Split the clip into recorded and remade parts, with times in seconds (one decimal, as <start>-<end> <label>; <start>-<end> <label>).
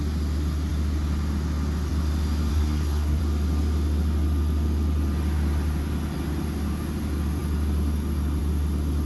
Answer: 0.0-2.5 recorded; 2.5-3.2 remade; 3.2-9.1 recorded